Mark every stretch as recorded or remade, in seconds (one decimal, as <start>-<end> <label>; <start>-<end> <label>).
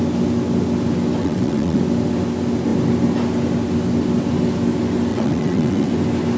0.0-1.2 recorded; 1.2-1.8 remade; 1.8-5.1 recorded; 5.1-5.9 remade; 5.9-6.4 recorded